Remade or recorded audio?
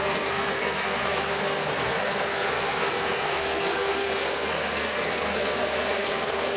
remade